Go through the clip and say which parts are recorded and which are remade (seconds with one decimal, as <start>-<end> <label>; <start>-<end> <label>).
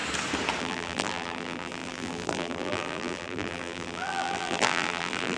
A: 0.0-0.6 recorded; 0.6-5.4 remade